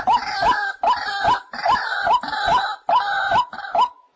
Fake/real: real